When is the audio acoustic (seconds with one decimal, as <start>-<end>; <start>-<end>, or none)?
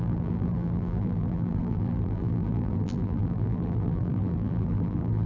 none